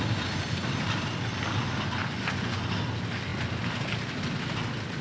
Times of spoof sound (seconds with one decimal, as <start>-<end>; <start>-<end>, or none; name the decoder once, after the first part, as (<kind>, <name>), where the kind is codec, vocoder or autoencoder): 2.0-2.6 (vocoder, Vocos)